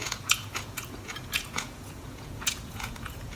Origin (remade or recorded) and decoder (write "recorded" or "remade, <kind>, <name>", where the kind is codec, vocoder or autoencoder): remade, vocoder, Vocos